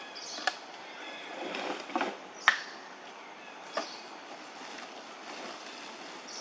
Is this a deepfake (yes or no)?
no